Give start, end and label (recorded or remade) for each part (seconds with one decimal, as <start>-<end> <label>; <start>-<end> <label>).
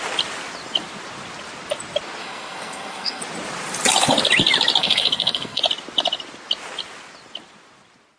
0.0-2.2 recorded; 2.2-3.2 remade; 3.2-4.8 recorded; 4.8-5.6 remade; 5.6-8.2 recorded